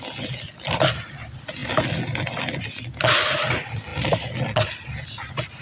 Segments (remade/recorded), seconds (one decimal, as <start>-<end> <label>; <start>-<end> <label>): 0.0-5.6 recorded